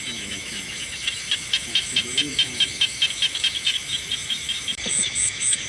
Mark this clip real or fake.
fake